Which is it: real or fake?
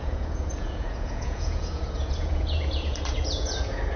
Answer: fake